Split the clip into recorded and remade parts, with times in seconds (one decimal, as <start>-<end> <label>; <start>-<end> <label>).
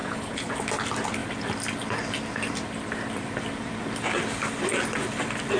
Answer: 0.0-0.5 remade; 0.5-5.6 recorded